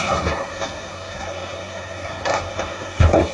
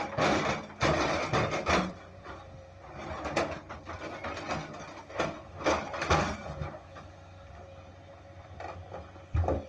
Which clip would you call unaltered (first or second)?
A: second